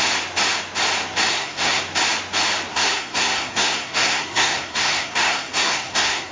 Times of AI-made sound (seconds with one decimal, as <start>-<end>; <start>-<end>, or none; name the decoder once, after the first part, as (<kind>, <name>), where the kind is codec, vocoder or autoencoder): 1.3-1.8 (codec, SNAC); 2.7-6.3